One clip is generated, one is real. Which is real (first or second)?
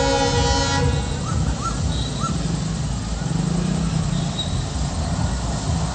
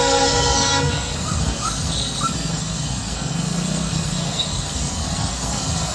first